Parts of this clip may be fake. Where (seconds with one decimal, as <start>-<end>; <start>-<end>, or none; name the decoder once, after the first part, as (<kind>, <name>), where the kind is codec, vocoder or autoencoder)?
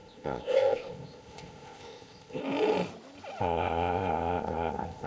0.0-2.4 (codec, ZipCodec); 3.4-5.1